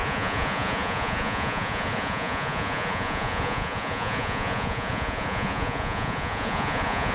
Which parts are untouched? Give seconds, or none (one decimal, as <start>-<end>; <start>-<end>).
none